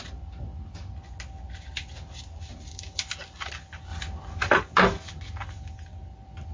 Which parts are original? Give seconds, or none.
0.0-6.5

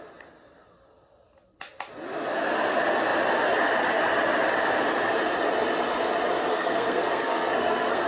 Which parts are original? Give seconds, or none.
0.0-6.5

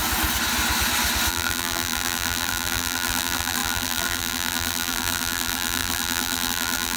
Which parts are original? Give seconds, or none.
0.0-1.3

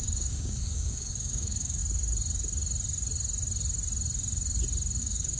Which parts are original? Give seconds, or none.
1.8-5.0

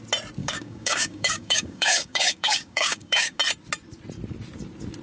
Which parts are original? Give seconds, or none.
0.0-0.4; 3.4-5.0

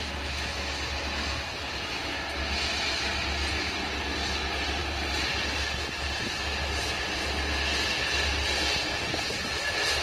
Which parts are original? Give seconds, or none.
0.0-10.0

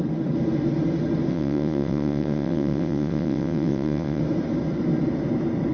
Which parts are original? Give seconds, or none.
0.0-1.3; 4.2-5.7

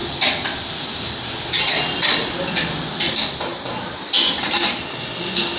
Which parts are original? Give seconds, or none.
0.0-5.6